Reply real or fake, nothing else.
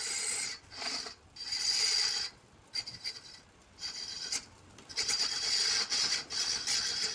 real